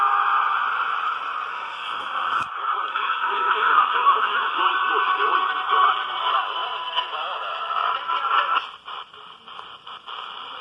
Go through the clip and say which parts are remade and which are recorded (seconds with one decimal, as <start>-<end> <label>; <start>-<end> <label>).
0.0-1.5 recorded; 1.5-2.4 remade; 2.4-2.9 recorded; 2.9-4.6 remade; 4.6-10.6 recorded